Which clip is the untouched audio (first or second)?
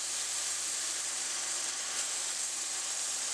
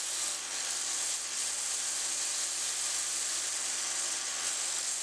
second